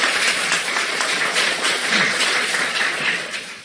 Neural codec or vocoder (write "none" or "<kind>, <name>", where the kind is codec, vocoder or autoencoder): vocoder, Vocos